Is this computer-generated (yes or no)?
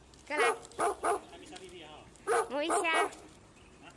no